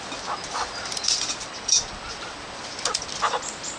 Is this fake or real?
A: real